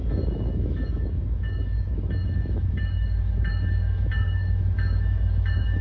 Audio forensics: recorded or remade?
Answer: remade